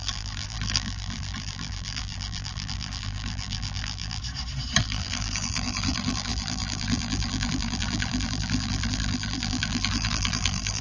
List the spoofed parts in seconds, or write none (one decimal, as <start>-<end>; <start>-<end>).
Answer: 0.0-4.2; 4.8-10.8